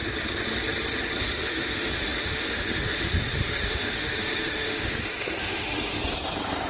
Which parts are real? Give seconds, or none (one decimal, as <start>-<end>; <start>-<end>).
0.0-1.2; 6.0-6.7